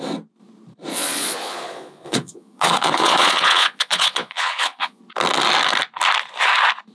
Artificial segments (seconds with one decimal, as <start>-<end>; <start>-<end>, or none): 0.9-5.0

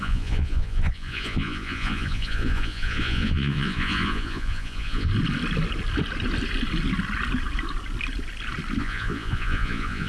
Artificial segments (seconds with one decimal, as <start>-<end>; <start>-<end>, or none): 0.0-5.1; 8.8-10.1

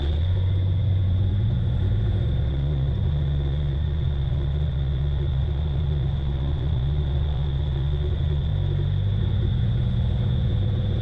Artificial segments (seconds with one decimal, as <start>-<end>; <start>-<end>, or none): 0.0-8.5; 9.2-11.0

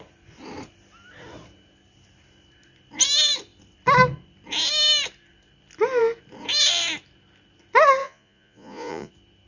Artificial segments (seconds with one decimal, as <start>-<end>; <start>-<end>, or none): 8.0-9.1

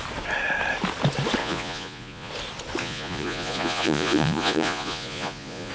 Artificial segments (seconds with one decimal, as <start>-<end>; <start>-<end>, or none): 1.4-2.3; 2.8-5.7